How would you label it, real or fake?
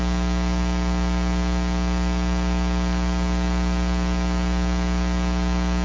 real